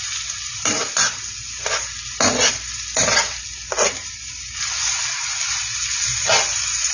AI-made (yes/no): no